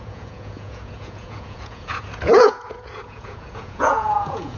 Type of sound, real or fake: fake